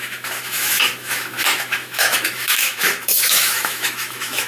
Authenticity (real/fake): fake